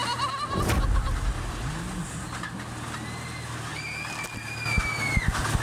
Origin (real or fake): real